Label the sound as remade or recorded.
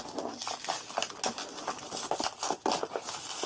recorded